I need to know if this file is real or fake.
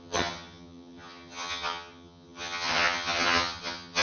fake